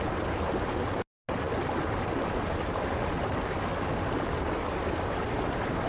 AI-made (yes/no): no